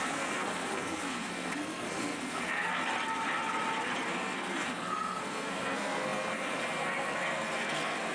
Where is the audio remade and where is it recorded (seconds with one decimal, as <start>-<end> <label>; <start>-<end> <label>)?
0.0-2.8 remade; 2.8-4.1 recorded; 4.1-8.1 remade